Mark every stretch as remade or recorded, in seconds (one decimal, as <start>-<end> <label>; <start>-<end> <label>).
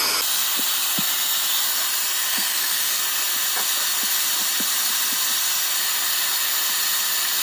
0.0-2.3 recorded; 2.3-3.0 remade; 3.0-7.4 recorded